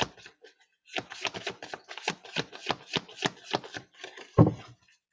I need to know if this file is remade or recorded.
recorded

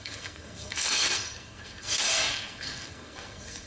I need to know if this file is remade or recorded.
remade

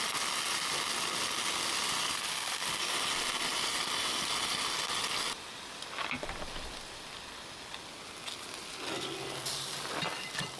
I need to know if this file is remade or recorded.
recorded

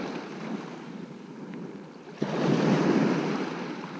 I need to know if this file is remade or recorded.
recorded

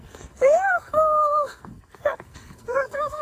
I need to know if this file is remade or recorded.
remade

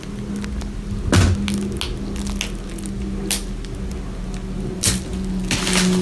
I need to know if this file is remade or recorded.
recorded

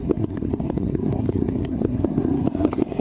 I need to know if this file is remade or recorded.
remade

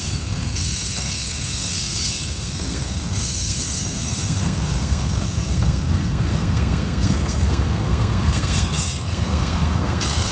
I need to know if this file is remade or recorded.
remade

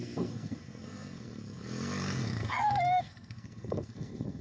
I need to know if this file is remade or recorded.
remade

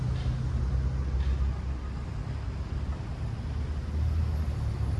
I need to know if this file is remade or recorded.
recorded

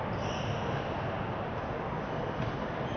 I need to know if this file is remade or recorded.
recorded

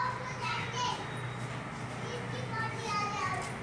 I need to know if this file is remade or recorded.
recorded